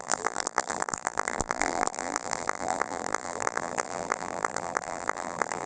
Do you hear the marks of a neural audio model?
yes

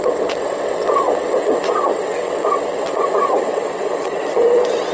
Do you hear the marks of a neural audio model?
yes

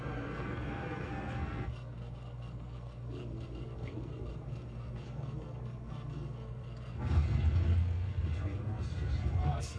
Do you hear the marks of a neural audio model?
yes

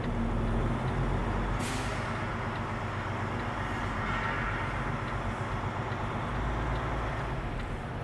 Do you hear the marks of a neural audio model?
no